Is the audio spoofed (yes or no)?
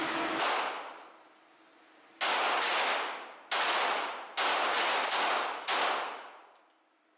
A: no